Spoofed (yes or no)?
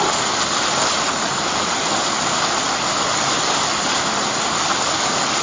no